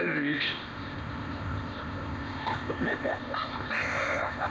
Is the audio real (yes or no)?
no